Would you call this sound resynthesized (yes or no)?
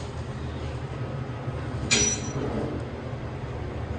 no